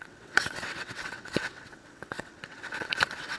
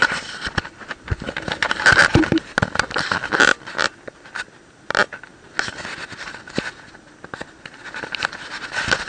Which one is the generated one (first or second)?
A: first